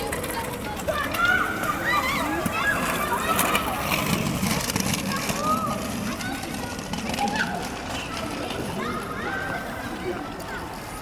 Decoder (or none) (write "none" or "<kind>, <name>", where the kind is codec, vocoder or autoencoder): none